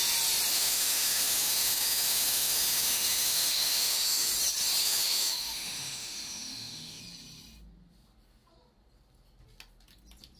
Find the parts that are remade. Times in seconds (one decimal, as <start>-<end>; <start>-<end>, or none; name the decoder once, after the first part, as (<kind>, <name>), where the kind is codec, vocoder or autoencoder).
0.5-4.3 (autoencoder, DAC-VAE); 4.8-7.0